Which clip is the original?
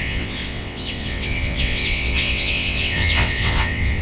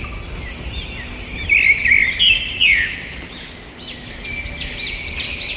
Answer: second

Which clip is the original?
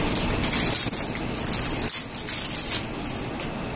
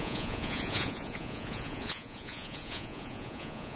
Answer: first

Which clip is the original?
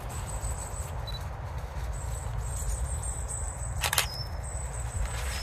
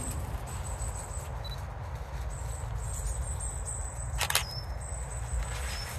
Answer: second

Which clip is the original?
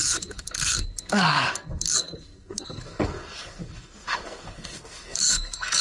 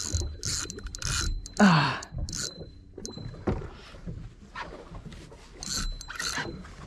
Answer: second